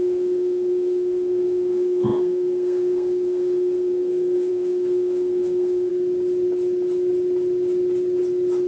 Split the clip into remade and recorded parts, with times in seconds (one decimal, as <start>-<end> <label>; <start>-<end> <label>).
0.0-5.9 remade; 5.9-8.7 recorded